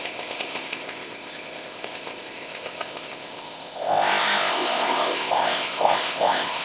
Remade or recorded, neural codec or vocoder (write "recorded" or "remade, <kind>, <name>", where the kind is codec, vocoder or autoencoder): remade, codec, ZipCodec